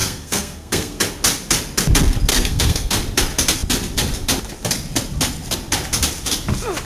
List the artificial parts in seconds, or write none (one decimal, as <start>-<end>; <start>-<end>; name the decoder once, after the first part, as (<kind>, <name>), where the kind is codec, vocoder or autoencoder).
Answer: 0.0-1.0 (codec, SNAC); 2.3-3.0

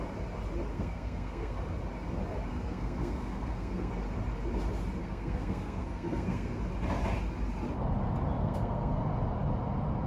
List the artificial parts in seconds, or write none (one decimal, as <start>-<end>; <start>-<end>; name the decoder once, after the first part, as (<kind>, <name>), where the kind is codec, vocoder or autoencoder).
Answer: 0.7-1.6 (codec, SNAC); 2.5-3.9; 5.0-6.6; 8.4-9.0

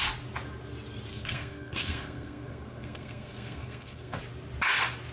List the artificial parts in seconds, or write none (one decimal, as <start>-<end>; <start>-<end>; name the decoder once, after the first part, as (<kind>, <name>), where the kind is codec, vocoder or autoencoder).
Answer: 1.1-4.2 (codec, SNAC)

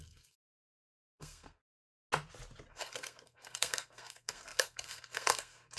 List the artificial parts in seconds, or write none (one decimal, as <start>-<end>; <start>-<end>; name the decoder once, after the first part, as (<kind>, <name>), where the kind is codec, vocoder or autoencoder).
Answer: 0.0-1.6 (codec, SNAC); 2.7-5.8

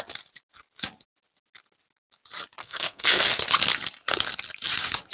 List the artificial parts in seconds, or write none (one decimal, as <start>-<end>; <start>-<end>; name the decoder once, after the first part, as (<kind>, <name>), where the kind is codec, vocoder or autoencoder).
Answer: 2.6-3.4 (codec, SNAC)